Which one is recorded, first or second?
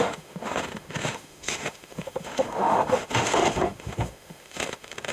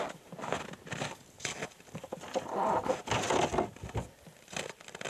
second